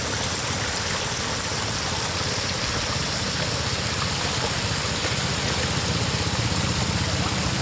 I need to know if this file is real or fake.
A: real